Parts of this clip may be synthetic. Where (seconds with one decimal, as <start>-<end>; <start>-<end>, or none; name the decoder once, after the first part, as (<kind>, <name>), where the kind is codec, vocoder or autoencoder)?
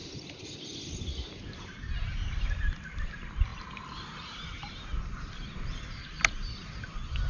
none